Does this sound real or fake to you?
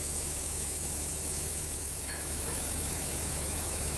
fake